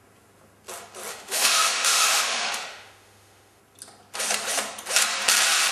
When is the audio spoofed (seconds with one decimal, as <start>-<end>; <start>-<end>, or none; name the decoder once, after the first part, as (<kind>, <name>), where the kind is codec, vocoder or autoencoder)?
1.1-3.6 (autoencoder, DAC-VAE)